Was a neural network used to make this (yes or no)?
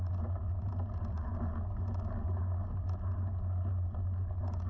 no